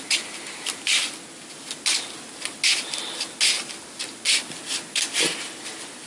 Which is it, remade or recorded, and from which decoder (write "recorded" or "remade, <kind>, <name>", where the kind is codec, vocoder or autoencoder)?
recorded